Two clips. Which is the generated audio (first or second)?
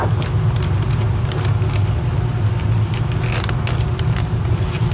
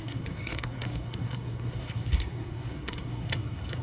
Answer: second